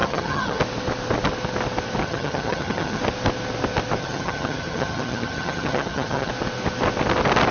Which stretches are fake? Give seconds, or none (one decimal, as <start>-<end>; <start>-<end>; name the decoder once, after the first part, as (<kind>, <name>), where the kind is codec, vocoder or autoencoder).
0.0-0.6 (vocoder, HiFi-GAN); 2.0-3.0; 4.0-6.3